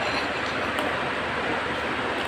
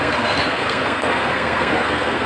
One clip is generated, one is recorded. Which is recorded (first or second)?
first